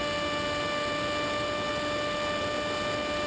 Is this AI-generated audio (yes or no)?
no